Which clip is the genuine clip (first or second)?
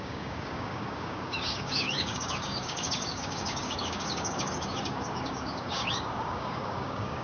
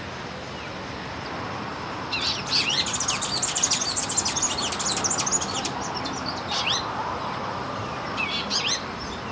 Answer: second